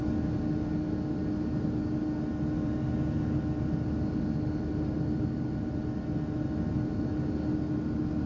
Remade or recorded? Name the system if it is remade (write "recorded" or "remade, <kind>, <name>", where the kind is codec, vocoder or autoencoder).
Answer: recorded